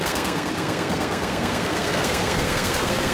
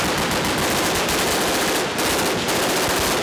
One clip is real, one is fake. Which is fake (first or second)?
first